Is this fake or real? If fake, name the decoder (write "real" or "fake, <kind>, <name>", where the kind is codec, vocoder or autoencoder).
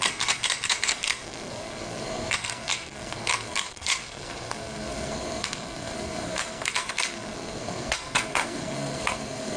fake, codec, SNAC